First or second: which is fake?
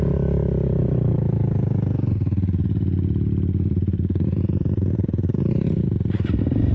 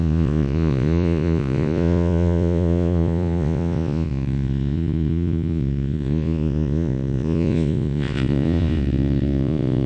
second